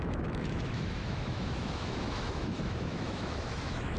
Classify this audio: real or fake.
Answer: fake